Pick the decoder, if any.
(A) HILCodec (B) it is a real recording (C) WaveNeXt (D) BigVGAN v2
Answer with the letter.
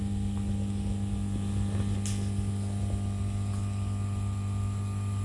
B